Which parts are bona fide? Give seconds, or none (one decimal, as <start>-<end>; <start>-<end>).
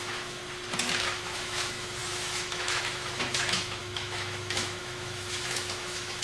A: 0.4-0.9